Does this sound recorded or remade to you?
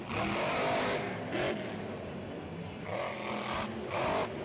recorded